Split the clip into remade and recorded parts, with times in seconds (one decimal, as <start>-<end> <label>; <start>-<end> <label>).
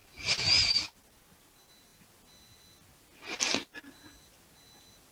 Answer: 0.0-5.1 recorded